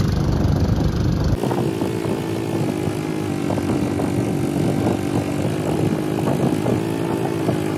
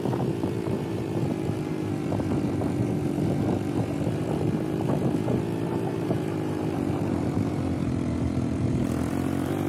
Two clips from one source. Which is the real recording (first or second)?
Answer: first